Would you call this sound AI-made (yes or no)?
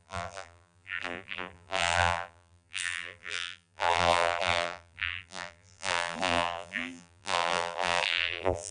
yes